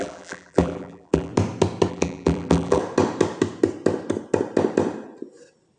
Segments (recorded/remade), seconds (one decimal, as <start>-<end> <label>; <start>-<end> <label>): 0.0-1.3 remade; 1.3-1.9 recorded; 1.9-2.8 remade; 2.8-5.8 recorded